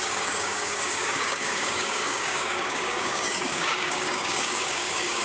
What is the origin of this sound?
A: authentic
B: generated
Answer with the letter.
B